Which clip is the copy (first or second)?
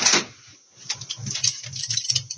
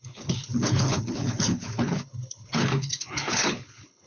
second